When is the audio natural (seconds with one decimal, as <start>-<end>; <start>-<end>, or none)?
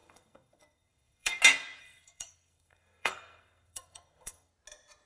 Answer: 1.4-1.8; 4.5-5.1